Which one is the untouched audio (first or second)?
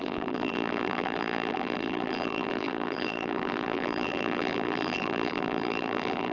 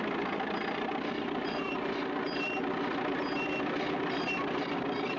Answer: second